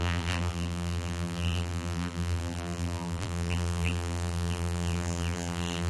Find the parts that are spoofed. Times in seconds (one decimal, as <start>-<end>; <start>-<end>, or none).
0.0-5.9